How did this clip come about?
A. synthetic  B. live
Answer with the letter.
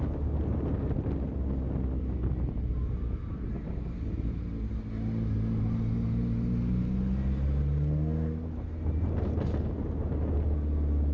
B